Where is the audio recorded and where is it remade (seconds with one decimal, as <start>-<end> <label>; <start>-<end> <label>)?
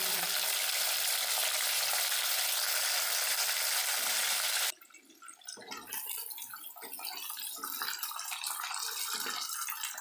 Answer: 0.0-3.8 remade; 3.8-7.8 recorded; 7.8-10.0 remade